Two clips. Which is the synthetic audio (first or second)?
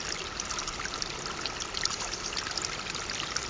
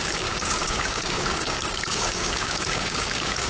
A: second